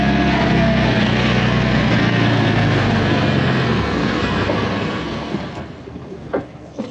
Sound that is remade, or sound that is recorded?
remade